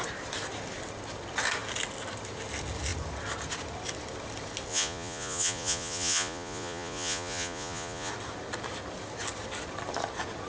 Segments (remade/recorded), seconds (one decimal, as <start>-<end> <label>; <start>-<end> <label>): 0.0-4.7 recorded; 4.7-8.1 remade; 8.1-10.5 recorded